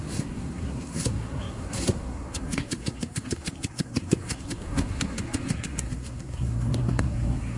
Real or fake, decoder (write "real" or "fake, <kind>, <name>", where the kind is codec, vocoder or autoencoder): fake, codec, SNAC